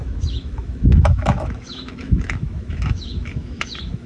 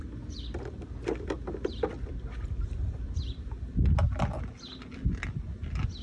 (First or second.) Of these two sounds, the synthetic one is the first